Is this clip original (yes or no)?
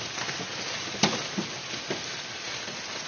yes